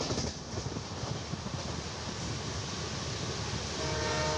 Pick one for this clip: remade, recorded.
recorded